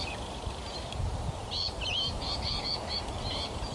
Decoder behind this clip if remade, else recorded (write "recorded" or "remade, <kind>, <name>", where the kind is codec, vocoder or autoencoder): remade, vocoder, BigVGAN v2